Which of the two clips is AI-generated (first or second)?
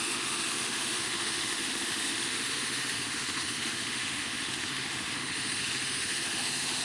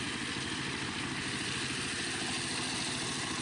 first